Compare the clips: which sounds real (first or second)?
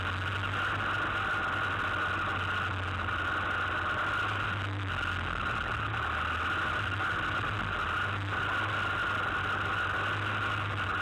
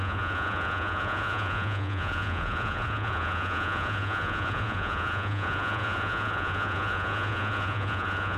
first